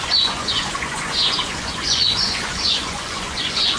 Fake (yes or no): yes